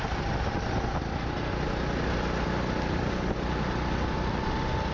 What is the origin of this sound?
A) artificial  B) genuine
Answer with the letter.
B